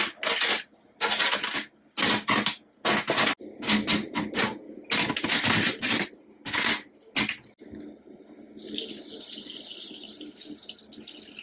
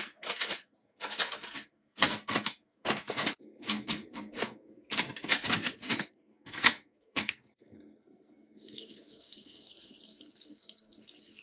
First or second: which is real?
first